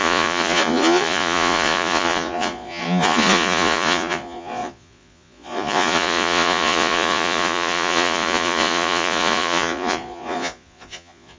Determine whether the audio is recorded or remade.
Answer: remade